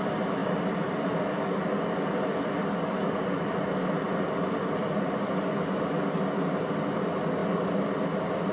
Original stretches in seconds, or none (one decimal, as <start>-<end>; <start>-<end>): 0.0-8.5